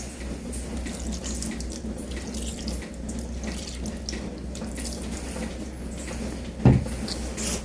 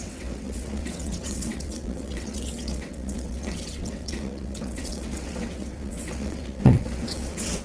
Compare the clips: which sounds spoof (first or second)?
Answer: second